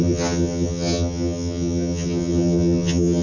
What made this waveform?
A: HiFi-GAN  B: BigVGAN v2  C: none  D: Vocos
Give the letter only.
A